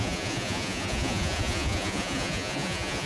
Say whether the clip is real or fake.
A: fake